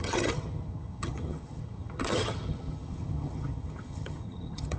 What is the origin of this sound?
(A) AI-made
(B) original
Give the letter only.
A